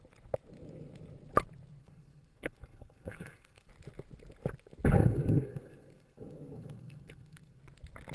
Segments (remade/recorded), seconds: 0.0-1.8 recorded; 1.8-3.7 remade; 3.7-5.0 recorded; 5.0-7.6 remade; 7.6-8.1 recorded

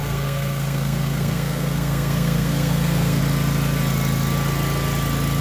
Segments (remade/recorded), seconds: 0.0-3.2 remade; 3.2-5.4 recorded

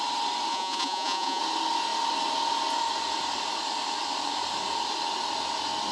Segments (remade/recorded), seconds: 0.0-0.5 recorded; 0.5-1.4 remade; 1.4-5.9 recorded

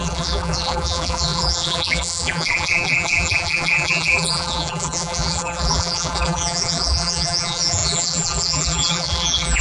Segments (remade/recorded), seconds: 0.0-9.6 remade

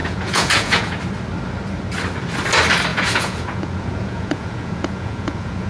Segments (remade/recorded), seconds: 0.0-1.0 remade; 1.0-2.9 recorded; 2.9-5.7 remade